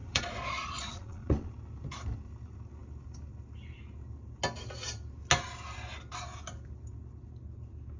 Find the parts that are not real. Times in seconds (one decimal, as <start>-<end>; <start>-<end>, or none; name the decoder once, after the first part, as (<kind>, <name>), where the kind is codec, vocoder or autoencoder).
0.0-1.5 (vocoder, Vocos)